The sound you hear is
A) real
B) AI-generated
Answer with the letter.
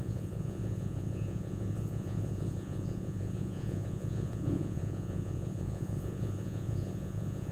B